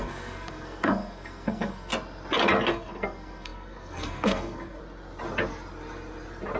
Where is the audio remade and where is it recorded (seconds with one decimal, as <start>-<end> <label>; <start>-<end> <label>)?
0.0-1.9 remade; 1.9-2.7 recorded; 2.7-4.8 remade; 4.8-6.6 recorded